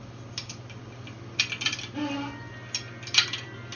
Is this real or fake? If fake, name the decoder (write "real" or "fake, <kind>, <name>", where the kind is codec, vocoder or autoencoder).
real